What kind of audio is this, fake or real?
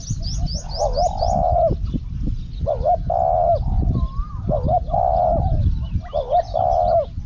real